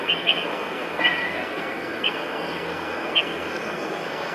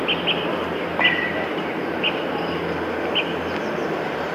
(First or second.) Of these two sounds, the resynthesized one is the first